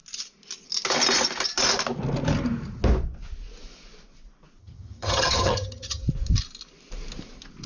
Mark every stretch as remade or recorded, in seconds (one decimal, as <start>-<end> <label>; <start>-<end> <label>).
0.0-4.6 recorded; 4.6-6.0 remade; 6.0-7.7 recorded